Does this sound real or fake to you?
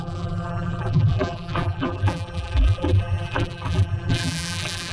fake